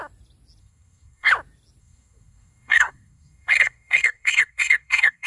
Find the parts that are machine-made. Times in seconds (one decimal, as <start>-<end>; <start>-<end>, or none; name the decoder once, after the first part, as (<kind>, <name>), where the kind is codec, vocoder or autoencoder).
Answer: 0.6-1.3 (codec, SNAC); 1.8-5.3

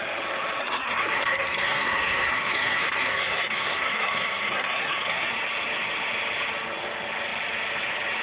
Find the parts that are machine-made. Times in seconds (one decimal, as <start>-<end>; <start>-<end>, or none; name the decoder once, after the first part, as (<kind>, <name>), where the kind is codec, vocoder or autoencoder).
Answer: 0.6-5.3 (codec, SNAC)

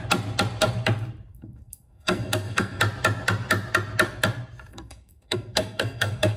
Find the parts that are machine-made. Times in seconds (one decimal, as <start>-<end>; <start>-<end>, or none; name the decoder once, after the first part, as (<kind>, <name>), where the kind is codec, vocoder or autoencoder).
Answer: 1.3-2.8 (codec, SNAC); 4.7-6.4

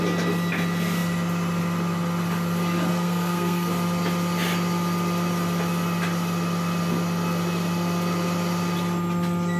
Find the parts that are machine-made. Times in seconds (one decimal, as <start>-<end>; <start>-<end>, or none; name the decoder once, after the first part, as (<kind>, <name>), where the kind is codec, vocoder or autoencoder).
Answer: 2.9-3.7 (codec, SNAC)